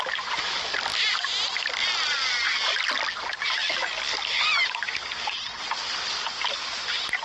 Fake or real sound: real